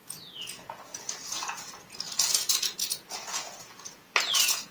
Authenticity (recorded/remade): remade